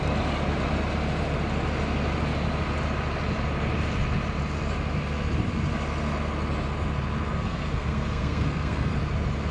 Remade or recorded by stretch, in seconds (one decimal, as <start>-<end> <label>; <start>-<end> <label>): 0.0-7.3 recorded; 7.3-8.9 remade; 8.9-9.5 recorded